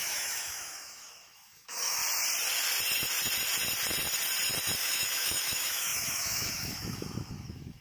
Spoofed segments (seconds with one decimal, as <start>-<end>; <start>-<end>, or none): 0.0-2.0; 4.8-7.8